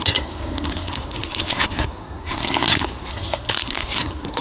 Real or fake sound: fake